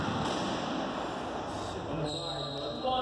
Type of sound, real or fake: real